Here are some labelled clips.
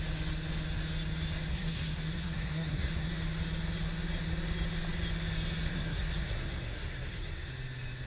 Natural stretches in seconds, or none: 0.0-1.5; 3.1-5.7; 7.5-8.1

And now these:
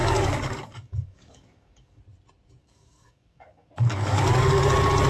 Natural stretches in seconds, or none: 2.0-2.6; 4.6-5.1

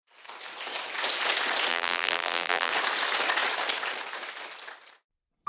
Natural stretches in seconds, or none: 0.0-1.7; 2.7-5.5

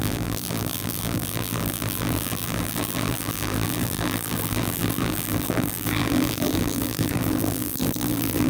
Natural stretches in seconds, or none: none

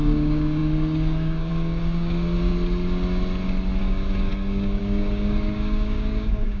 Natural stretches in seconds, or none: 2.5-3.8

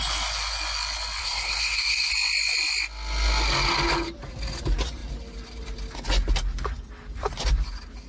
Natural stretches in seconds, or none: 0.0-1.2; 2.1-8.1

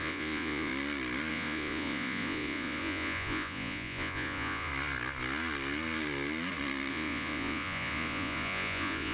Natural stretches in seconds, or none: 0.7-1.3; 4.7-6.9